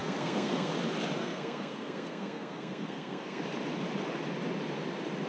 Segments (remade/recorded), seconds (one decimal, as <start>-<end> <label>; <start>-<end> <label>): 0.0-0.7 remade; 0.7-1.2 recorded; 1.2-3.4 remade; 3.4-5.3 recorded